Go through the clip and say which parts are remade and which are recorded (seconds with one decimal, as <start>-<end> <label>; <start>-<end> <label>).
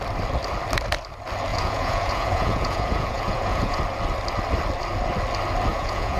0.0-1.5 recorded; 1.5-3.8 remade; 3.8-5.7 recorded; 5.7-6.2 remade